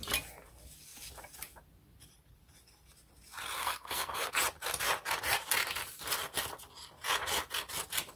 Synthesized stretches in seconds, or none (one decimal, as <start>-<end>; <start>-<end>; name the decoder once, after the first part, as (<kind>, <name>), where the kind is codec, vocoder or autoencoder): 3.6-4.3 (codec, SNAC)